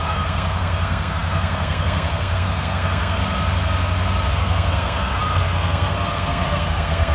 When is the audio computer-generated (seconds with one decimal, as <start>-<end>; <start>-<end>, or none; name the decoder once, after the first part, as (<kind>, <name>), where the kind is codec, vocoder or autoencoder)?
0.0-3.2 (codec, SNAC); 4.3-7.1